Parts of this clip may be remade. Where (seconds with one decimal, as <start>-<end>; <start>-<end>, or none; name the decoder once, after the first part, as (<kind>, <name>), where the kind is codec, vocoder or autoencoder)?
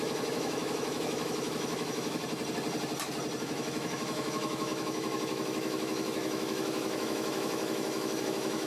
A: 0.0-2.2 (autoencoder, DAC-VAE); 3.4-8.7